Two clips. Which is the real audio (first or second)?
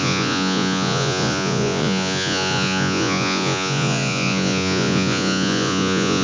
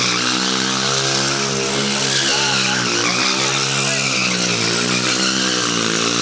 second